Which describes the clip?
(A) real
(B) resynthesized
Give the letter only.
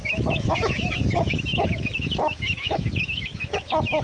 B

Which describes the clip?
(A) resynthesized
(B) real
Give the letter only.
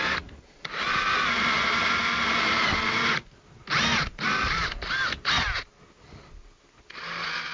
B